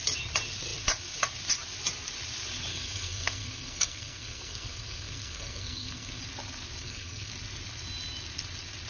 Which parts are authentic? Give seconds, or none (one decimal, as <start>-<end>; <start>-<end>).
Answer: 0.0-2.7; 6.2-6.8; 7.3-8.9